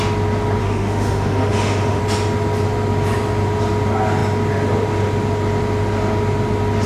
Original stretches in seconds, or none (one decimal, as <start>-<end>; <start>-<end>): 0.0-0.6; 2.0-6.9